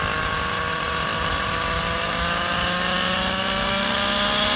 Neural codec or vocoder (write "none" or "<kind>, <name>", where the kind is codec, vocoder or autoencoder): none